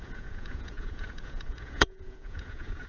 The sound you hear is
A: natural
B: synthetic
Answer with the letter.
B